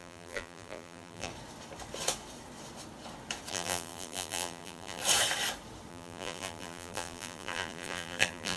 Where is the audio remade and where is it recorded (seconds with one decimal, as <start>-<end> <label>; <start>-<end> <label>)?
0.0-1.3 remade; 1.3-3.5 recorded; 3.5-5.0 remade; 5.0-5.9 recorded; 5.9-8.6 remade